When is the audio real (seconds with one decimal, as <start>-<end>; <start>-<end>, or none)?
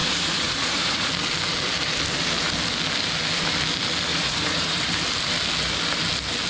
1.1-4.1; 4.8-6.5